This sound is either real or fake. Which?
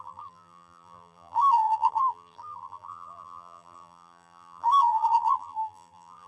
fake